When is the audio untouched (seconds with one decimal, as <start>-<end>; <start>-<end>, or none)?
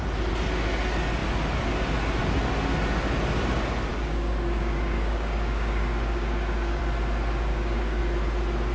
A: 0.0-3.9; 6.8-7.5; 8.0-8.7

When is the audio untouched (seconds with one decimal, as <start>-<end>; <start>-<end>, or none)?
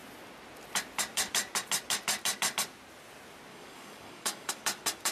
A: 0.0-3.5; 4.5-5.1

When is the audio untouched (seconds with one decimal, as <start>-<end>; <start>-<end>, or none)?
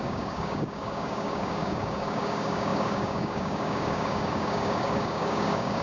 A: none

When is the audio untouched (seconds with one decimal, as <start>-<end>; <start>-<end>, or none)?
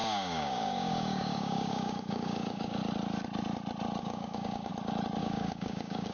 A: 2.8-4.0; 4.7-5.2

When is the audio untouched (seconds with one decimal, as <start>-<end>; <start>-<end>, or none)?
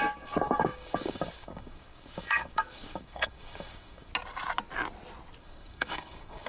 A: 4.1-5.4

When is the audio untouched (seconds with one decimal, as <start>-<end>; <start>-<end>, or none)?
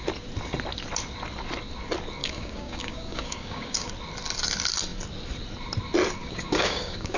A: 0.0-2.2; 3.9-6.2